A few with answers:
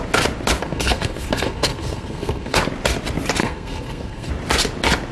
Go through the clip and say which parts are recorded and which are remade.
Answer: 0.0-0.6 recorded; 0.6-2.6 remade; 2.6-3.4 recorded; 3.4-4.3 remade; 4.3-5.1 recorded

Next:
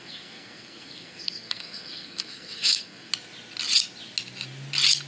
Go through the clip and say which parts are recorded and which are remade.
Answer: 0.0-3.1 remade; 3.1-5.1 recorded

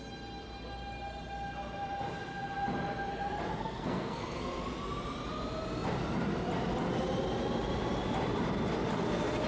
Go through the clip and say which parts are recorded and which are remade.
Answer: 0.0-3.6 recorded; 3.6-4.6 remade; 4.6-9.5 recorded

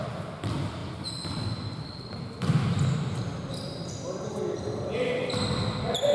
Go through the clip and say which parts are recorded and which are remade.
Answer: 0.0-6.1 recorded

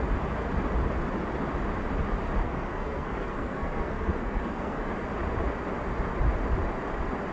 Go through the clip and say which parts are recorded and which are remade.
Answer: 0.0-2.4 recorded; 2.4-4.9 remade; 4.9-7.3 recorded